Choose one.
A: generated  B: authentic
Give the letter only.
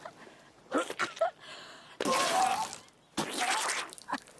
B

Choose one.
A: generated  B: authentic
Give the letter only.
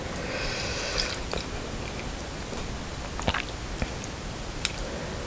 B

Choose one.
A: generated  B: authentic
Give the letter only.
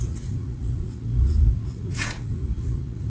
A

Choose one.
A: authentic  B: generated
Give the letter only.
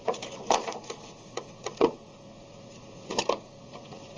B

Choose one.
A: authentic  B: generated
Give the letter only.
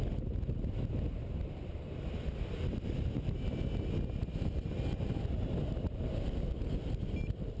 A